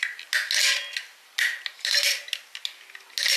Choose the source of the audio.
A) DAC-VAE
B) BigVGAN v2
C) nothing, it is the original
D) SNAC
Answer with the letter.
C